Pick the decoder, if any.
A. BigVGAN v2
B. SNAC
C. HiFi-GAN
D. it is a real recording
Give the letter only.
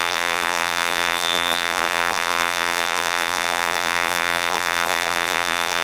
A